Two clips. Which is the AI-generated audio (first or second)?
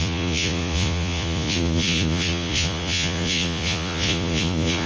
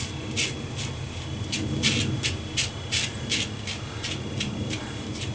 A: first